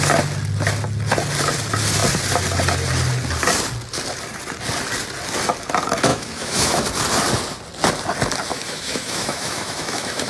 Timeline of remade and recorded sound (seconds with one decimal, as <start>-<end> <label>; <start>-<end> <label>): 0.0-6.1 recorded; 6.1-6.8 remade; 6.8-8.5 recorded; 8.5-10.3 remade